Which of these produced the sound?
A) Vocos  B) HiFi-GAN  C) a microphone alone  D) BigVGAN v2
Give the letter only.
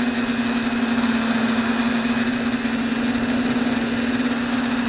C